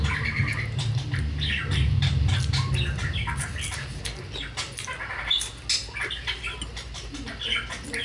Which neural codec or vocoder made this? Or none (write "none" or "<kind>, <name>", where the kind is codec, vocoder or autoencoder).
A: none